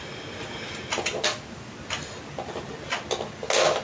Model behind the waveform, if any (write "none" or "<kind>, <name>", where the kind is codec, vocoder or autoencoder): none